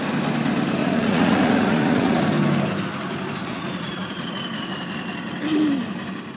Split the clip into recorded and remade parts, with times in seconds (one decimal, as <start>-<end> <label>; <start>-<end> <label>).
0.0-0.8 recorded; 0.8-2.2 remade; 2.2-3.4 recorded; 3.4-4.3 remade; 4.3-6.4 recorded